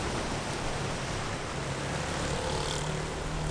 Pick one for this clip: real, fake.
real